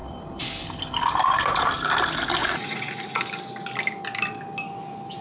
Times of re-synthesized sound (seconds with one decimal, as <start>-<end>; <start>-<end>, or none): 2.4-3.2